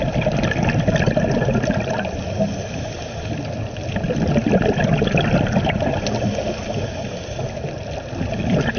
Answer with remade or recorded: recorded